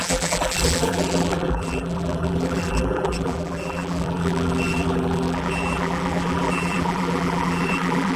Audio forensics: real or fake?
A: fake